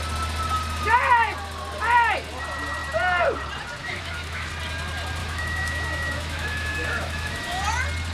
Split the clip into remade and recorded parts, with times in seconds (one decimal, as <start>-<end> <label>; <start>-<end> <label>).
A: 0.0-3.8 recorded; 3.8-4.5 remade; 4.5-5.2 recorded; 5.2-7.6 remade; 7.6-8.1 recorded